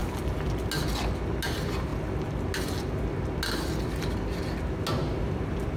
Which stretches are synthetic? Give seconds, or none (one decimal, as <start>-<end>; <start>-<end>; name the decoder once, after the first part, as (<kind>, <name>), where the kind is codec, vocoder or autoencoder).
5.0-5.8 (vocoder, BigVGAN v2)